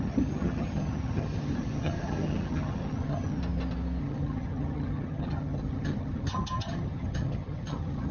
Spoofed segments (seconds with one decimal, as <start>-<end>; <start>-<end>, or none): 0.0-3.4; 4.0-8.1